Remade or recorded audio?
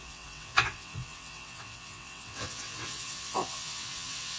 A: remade